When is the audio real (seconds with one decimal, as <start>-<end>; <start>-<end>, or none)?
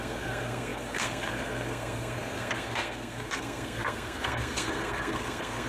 none